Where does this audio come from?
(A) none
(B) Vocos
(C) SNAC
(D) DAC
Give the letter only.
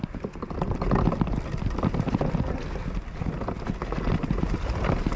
A